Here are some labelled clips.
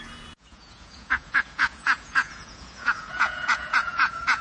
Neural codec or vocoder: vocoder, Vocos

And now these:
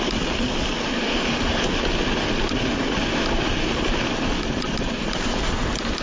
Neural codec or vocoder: none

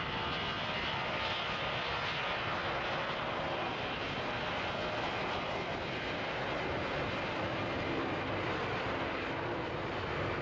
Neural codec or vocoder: none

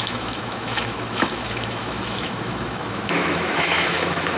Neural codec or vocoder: autoencoder, DAC-VAE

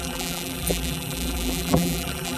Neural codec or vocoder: vocoder, BigVGAN v2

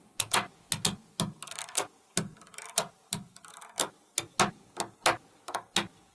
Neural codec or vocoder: none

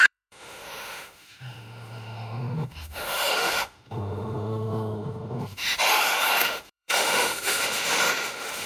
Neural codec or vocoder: autoencoder, DAC-VAE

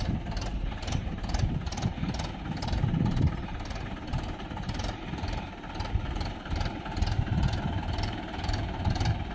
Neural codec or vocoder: vocoder, BigVGAN v2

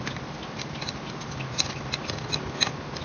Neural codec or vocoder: none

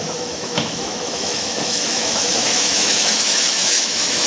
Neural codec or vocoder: autoencoder, DAC-VAE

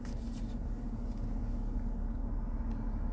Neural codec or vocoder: none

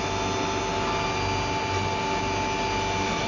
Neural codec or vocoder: none